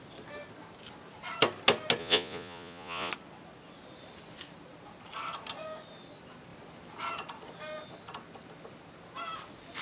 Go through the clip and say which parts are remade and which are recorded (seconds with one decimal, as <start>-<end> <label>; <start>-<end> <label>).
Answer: 0.0-2.0 recorded; 2.0-3.1 remade; 3.1-9.8 recorded